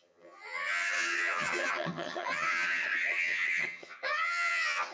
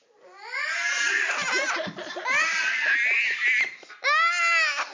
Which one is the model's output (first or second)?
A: first